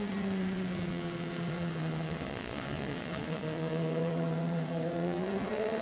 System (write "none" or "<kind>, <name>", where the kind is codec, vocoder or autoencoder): vocoder, WaveNeXt